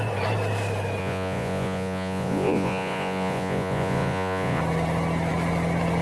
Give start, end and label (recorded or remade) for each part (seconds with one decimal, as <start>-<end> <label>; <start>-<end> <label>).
0.0-1.0 recorded; 1.0-4.6 remade; 4.6-6.0 recorded